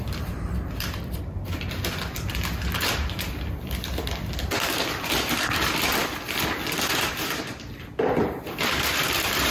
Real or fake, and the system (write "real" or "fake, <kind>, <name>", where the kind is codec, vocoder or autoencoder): fake, vocoder, BigVGAN v2